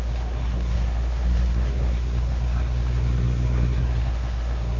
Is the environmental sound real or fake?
fake